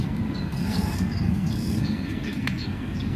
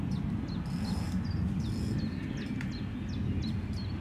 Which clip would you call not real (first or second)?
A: first